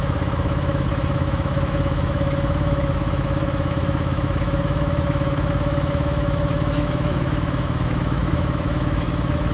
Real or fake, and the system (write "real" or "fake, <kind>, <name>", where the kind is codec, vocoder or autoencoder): fake, autoencoder, DAC-VAE